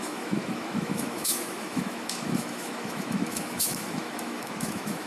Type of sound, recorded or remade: remade